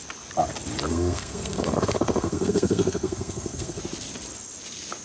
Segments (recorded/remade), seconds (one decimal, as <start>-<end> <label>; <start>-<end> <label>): 0.0-0.9 recorded; 0.9-3.8 remade; 3.8-5.0 recorded